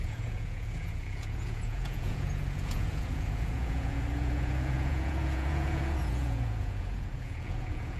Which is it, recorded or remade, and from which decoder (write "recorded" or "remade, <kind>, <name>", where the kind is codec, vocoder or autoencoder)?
remade, vocoder, Vocos